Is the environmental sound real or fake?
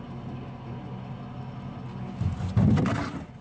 real